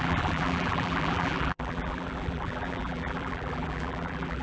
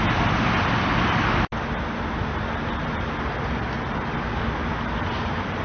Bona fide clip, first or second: second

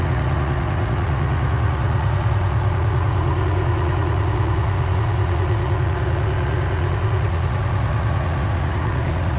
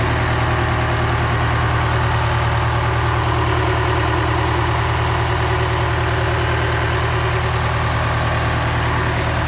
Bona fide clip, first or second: second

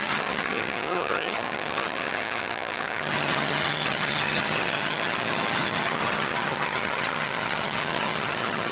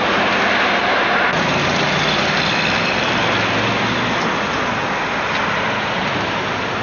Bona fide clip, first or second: second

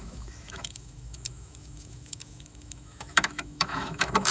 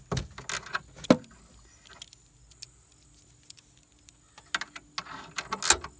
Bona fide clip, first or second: second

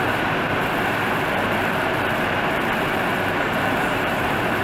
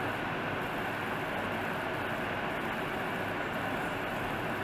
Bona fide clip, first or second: second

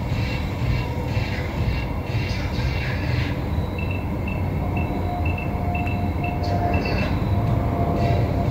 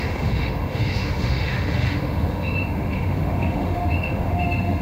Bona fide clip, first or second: first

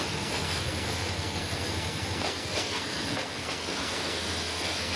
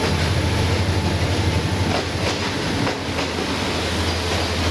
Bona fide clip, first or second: second